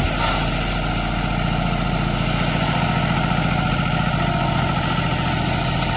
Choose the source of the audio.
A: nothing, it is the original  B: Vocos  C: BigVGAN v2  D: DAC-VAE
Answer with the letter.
A